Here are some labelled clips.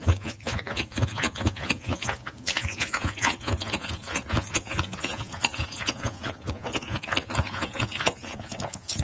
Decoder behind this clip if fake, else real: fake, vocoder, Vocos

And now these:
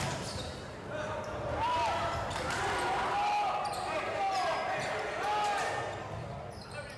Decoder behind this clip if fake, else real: real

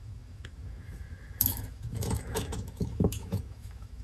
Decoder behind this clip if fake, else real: fake, autoencoder, DAC-VAE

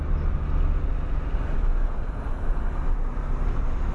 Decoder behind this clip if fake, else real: real